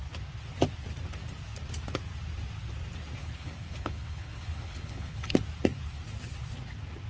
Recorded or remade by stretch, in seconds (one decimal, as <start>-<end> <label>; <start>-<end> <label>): 0.0-3.2 recorded; 3.2-5.3 remade; 5.3-7.1 recorded

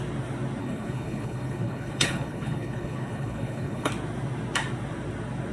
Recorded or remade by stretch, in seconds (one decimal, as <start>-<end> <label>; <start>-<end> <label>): 0.0-0.6 recorded; 0.6-3.9 remade; 3.9-5.5 recorded